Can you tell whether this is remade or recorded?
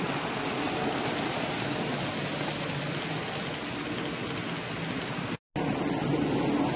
recorded